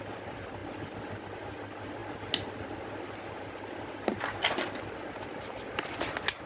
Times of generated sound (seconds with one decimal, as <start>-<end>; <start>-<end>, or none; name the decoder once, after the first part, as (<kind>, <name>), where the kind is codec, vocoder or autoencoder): none